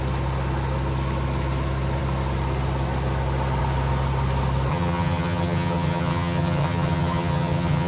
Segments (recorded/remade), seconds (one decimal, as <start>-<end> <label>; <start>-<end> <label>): 0.0-4.7 recorded; 4.7-7.9 remade